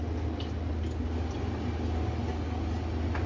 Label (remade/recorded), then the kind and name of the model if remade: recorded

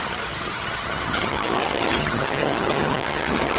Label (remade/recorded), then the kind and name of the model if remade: remade, vocoder, HiFi-GAN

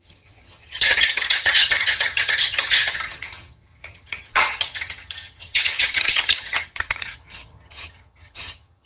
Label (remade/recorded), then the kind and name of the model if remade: remade, vocoder, HiFi-GAN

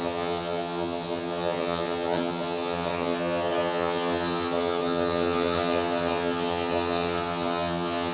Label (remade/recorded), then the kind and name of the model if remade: remade, vocoder, HiFi-GAN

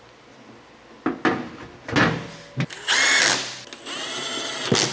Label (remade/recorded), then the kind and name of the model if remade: recorded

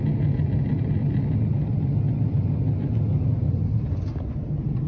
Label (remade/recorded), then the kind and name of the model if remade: recorded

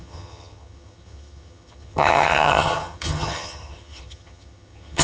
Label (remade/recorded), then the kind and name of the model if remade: remade, vocoder, HiFi-GAN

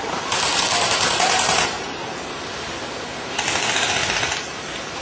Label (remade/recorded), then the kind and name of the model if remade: recorded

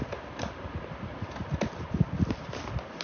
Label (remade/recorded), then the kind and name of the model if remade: recorded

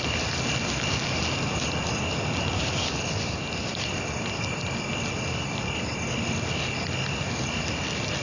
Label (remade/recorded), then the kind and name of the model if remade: recorded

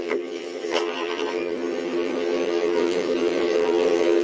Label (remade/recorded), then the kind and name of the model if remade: remade, vocoder, HiFi-GAN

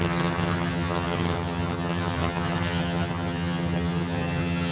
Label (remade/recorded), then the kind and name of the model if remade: remade, vocoder, HiFi-GAN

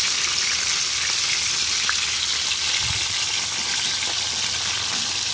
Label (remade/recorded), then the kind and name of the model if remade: recorded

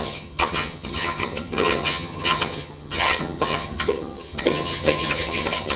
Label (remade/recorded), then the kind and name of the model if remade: remade, vocoder, HiFi-GAN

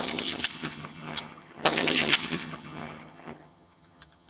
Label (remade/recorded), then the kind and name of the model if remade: remade, vocoder, HiFi-GAN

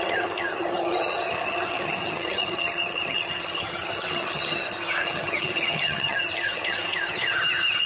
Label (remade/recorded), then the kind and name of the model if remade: remade, vocoder, HiFi-GAN